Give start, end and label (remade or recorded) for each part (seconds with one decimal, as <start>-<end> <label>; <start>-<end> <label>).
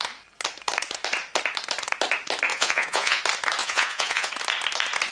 0.0-2.5 recorded; 2.5-3.2 remade; 3.2-3.6 recorded; 3.6-4.3 remade; 4.3-5.1 recorded